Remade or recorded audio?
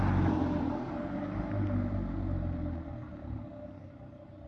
recorded